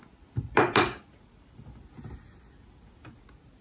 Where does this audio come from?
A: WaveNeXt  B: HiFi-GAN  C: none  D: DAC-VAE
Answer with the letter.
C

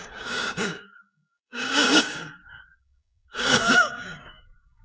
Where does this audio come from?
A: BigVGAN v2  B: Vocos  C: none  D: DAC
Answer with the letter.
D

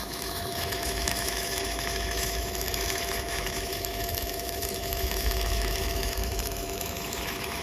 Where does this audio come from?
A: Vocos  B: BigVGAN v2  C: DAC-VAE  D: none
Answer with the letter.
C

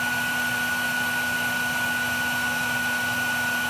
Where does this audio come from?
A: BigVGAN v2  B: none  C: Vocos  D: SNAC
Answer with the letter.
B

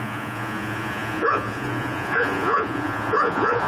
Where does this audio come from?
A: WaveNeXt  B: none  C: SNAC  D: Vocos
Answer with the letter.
D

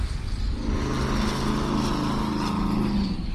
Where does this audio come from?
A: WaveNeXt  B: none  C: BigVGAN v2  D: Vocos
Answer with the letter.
B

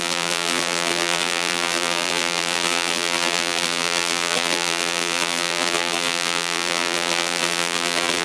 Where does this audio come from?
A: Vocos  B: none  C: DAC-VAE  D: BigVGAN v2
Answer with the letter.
D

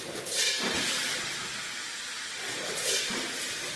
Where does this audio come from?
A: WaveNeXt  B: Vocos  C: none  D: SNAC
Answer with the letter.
C